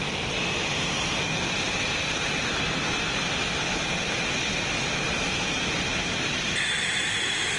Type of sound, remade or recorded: recorded